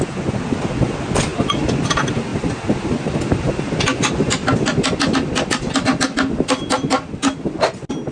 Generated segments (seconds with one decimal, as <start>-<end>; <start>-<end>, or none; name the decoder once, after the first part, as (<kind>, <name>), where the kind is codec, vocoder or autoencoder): none

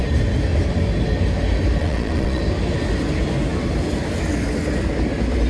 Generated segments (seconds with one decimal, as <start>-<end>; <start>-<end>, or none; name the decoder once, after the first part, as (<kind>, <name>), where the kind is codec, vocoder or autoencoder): 1.8-2.4 (vocoder, Vocos)

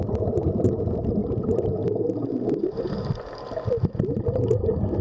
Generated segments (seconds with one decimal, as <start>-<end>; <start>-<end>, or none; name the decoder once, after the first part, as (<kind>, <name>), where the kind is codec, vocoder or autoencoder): none